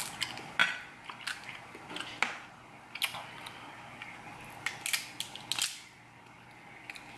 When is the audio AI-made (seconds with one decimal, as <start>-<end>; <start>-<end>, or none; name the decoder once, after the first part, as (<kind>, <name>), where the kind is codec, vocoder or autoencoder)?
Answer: none